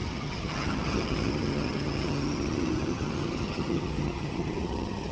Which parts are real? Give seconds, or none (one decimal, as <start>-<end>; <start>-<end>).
none